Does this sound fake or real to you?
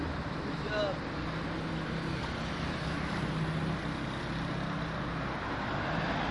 real